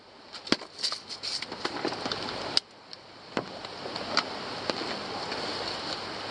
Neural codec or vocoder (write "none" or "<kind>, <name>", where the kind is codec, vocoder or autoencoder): none